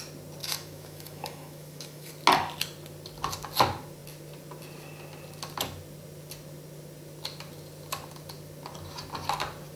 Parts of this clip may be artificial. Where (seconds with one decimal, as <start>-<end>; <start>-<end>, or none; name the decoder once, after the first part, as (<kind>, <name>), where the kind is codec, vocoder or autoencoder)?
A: 0.4-2.1 (autoencoder, DAC-VAE)

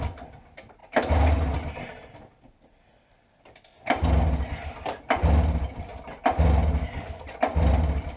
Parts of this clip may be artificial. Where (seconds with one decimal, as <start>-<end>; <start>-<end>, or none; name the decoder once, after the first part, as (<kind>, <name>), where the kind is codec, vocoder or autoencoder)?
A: none

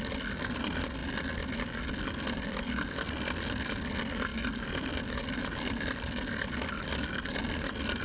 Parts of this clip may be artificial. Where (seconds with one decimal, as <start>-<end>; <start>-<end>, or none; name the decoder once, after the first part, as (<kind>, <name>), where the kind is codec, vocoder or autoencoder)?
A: none

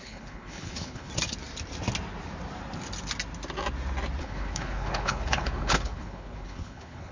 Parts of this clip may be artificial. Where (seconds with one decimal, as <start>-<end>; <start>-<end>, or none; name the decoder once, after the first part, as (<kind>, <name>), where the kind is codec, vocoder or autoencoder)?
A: 0.0-1.1 (codec, HILCodec); 4.2-7.1

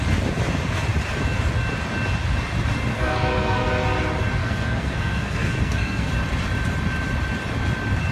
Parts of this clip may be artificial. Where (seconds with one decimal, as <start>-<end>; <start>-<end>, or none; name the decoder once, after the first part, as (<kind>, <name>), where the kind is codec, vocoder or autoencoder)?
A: 2.9-3.7 (codec, SNAC); 4.4-6.1

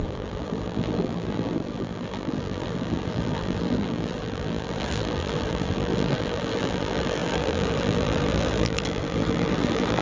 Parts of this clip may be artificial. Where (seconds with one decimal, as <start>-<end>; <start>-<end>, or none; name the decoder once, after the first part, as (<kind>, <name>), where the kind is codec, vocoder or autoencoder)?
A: 0.0-10.0 (vocoder, BigVGAN v2)